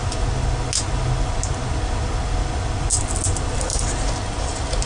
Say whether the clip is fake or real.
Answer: real